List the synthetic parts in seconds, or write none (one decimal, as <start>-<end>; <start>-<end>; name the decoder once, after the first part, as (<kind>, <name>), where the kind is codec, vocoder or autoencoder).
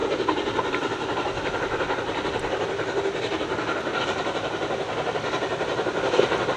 none